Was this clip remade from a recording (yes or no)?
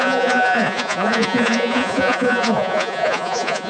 yes